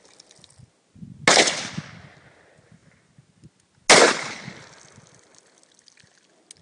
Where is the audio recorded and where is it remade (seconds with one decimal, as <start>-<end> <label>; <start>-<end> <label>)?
0.0-6.6 recorded